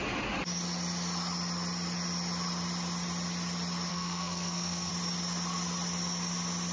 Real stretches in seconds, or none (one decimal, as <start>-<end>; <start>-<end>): 0.0-3.9; 4.9-6.7